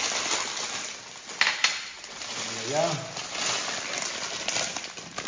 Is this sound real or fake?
real